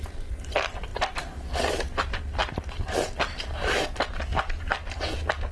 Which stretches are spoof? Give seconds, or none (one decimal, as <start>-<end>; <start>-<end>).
none